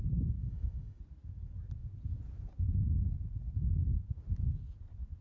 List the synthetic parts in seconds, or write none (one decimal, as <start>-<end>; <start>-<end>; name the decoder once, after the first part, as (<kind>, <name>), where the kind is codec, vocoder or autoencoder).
0.4-1.0 (autoencoder, DAC-VAE)